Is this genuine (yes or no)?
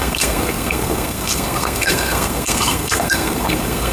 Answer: no